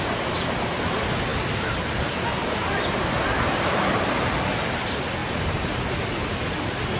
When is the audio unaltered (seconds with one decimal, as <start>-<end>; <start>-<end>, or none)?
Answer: 0.0-7.0